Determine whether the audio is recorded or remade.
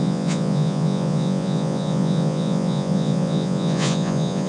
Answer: remade